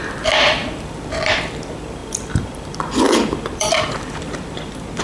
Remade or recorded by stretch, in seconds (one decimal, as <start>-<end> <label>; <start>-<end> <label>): 0.0-5.0 remade

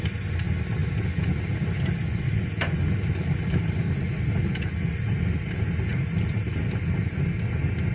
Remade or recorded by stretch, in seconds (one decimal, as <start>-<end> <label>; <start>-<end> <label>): 0.0-7.9 recorded